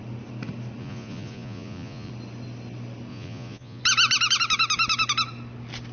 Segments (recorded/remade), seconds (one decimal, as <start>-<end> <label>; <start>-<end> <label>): 0.0-0.8 recorded; 0.8-2.1 remade; 2.1-3.1 recorded; 3.1-3.8 remade; 3.8-5.9 recorded